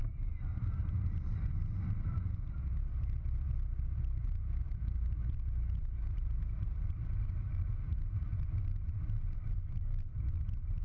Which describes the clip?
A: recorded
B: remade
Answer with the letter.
B